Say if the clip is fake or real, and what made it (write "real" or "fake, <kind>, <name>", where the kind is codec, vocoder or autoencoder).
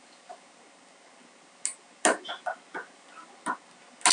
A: real